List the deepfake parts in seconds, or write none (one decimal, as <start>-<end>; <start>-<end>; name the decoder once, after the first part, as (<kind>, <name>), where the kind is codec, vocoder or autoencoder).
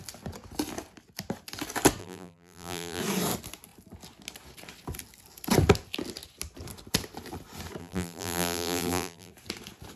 2.0-3.0 (vocoder, BigVGAN v2); 7.8-9.3